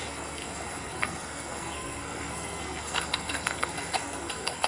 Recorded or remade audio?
remade